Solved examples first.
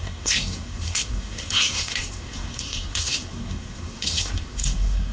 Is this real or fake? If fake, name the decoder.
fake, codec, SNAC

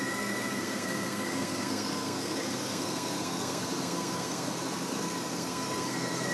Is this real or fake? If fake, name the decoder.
fake, codec, SNAC